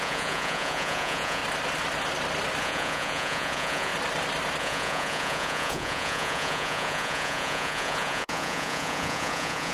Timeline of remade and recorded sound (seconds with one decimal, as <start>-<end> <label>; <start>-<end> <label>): 0.0-1.4 remade; 1.4-2.6 recorded; 2.6-3.9 remade; 3.9-4.6 recorded; 4.6-9.7 remade